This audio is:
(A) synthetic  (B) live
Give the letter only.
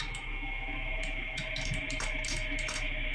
A